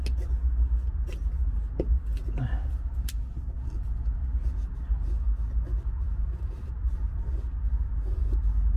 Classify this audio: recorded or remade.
recorded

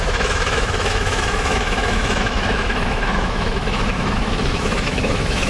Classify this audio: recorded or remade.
remade